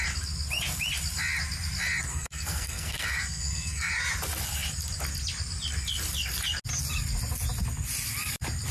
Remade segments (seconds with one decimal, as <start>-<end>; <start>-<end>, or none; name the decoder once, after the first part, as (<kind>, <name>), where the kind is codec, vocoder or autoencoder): 2.1-3.9 (codec, SNAC)